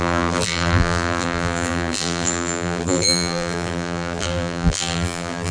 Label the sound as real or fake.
fake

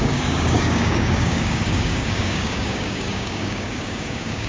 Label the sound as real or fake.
fake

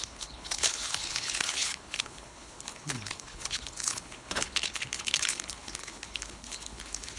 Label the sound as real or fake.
fake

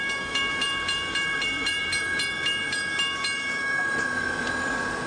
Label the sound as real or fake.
fake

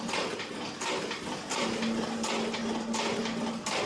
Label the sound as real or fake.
real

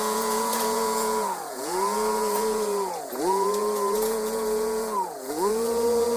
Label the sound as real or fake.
fake